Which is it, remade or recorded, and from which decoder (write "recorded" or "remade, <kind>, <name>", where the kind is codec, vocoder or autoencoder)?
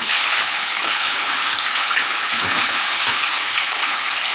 remade, codec, HILCodec